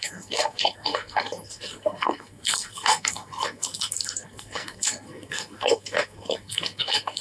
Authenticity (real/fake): fake